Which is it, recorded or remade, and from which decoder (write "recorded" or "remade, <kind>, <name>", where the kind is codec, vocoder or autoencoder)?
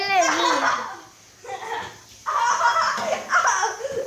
recorded